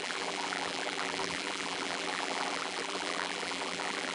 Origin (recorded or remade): remade